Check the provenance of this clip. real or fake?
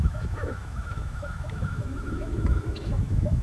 fake